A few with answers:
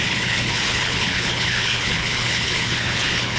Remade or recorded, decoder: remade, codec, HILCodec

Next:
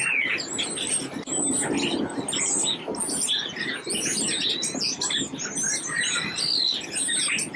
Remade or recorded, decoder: recorded